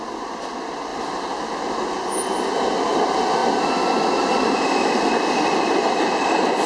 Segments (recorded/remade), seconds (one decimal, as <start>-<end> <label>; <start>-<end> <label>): 0.0-6.7 recorded